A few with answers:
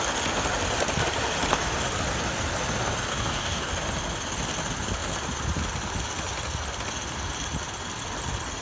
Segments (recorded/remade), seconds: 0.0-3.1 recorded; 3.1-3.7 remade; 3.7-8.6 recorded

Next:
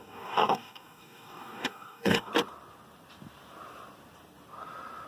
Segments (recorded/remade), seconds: 0.0-2.3 remade; 2.3-5.1 recorded

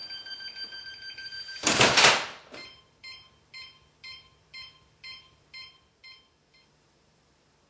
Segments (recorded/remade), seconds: 0.0-2.9 recorded; 2.9-7.7 remade

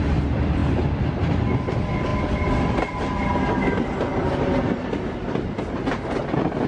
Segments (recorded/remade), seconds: 0.0-0.6 recorded; 0.6-1.3 remade; 1.3-4.1 recorded; 4.1-4.7 remade; 4.7-6.7 recorded

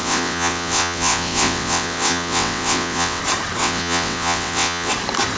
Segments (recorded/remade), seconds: 0.0-3.2 remade; 3.2-3.6 recorded; 3.6-4.9 remade; 4.9-5.4 recorded